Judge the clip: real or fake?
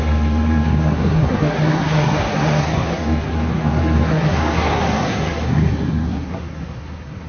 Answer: fake